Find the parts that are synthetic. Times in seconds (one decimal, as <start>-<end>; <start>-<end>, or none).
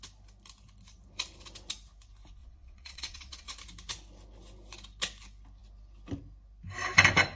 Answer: 2.4-3.5